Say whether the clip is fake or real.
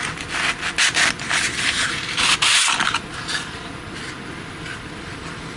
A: real